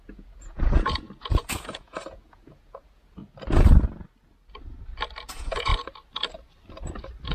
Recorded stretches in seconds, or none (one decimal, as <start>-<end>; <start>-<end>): 3.2-5.3; 5.7-7.3

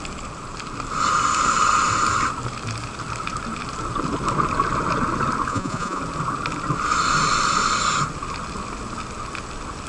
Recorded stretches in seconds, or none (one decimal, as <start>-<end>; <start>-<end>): 0.0-5.5; 6.0-9.9

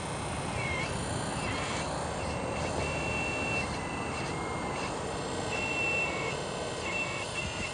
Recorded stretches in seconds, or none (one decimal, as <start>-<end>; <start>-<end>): 0.0-7.7

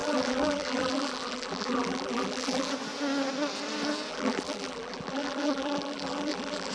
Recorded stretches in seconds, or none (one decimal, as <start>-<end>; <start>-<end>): 2.7-4.1

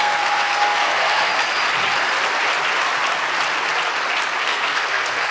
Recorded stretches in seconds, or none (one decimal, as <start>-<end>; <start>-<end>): 1.3-4.4

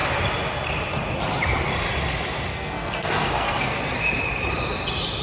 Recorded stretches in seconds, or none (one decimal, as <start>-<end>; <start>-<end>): 0.0-2.5; 3.8-5.2